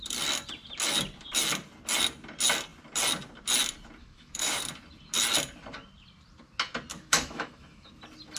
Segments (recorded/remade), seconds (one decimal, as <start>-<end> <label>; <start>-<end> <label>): 0.0-4.0 recorded; 4.0-4.6 remade; 4.6-6.9 recorded; 6.9-7.9 remade; 7.9-8.4 recorded